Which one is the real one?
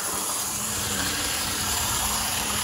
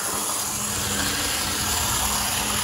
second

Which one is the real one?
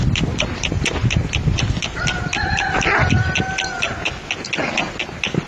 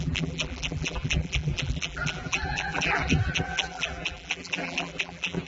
first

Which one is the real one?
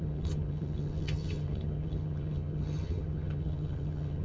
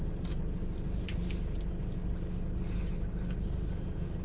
second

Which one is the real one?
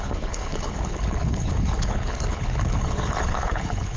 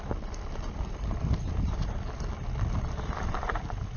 second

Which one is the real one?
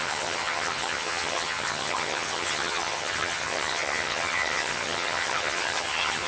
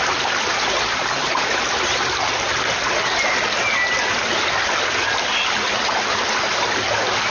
second